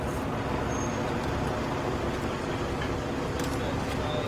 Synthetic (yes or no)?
no